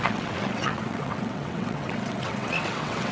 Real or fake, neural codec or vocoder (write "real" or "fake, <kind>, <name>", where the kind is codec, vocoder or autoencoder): fake, vocoder, WaveNeXt